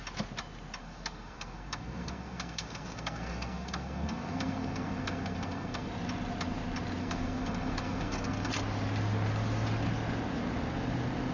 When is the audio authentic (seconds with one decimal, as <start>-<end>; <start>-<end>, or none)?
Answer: 0.0-0.8; 5.9-7.0; 8.5-11.3